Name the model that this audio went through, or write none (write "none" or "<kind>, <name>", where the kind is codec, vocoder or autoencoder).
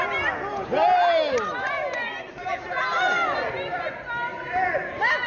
none